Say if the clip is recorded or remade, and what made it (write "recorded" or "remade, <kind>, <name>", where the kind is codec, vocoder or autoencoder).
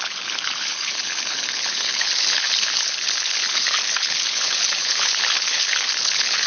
remade, codec, HILCodec